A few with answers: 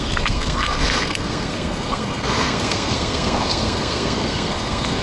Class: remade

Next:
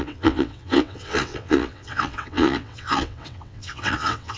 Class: remade